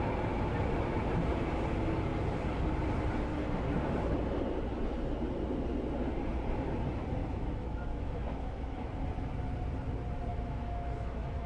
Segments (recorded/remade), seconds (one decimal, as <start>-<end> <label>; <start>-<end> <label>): 0.0-7.2 recorded; 7.2-9.0 remade; 9.0-10.3 recorded; 10.3-11.5 remade